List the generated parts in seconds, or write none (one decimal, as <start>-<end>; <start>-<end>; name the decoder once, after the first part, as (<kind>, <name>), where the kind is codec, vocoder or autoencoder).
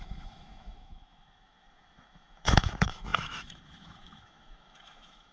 0.0-5.3 (autoencoder, DAC-VAE)